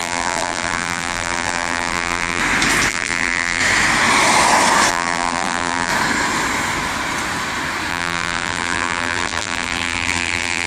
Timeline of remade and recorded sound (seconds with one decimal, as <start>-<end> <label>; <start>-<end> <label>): 0.0-2.4 remade; 2.4-2.9 recorded; 2.9-3.6 remade; 3.6-4.9 recorded; 4.9-5.9 remade; 5.9-7.9 recorded; 7.9-10.7 remade